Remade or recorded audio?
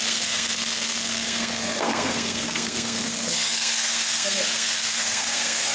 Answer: remade